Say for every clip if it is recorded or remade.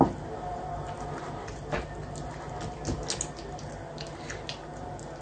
recorded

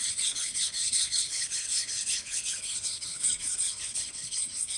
remade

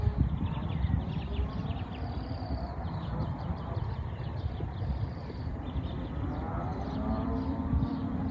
remade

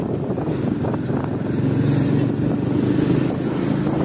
recorded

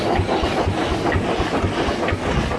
recorded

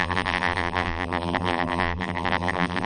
remade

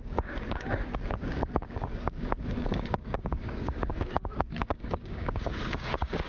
remade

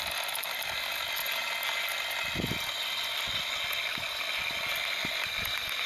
recorded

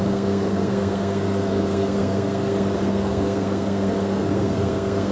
remade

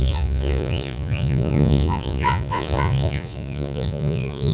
remade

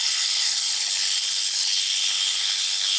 remade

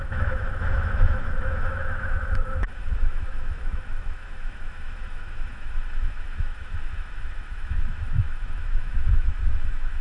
remade